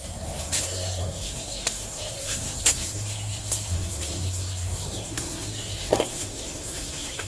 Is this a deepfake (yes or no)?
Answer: yes